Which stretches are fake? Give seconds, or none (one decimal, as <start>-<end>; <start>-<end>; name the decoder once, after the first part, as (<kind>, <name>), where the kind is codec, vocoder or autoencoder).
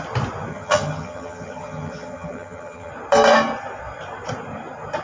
0.5-2.9 (vocoder, HiFi-GAN)